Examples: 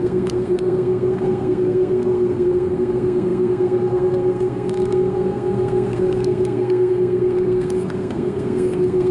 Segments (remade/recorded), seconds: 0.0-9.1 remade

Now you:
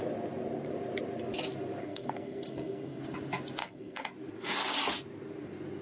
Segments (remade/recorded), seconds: 0.0-1.8 recorded; 1.8-3.0 remade; 3.0-3.6 recorded; 3.6-4.1 remade; 4.1-5.8 recorded

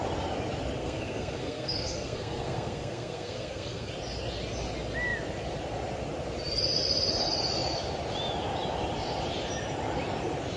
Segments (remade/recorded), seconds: 0.0-0.8 recorded; 0.8-3.9 remade; 3.9-10.6 recorded

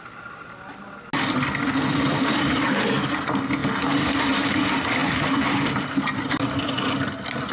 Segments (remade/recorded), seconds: 0.0-7.5 recorded

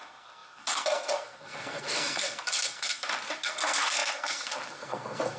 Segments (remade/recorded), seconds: 0.0-5.4 remade